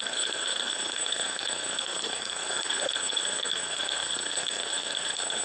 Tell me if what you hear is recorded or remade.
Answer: remade